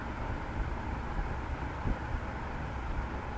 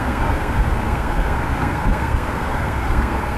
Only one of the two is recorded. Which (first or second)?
first